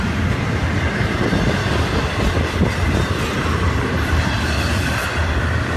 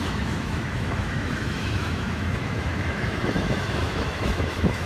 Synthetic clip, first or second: second